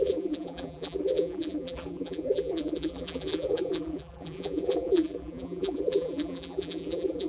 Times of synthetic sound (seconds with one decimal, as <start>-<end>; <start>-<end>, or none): 0.0-7.3